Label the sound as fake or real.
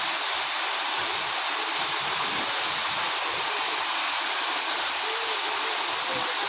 fake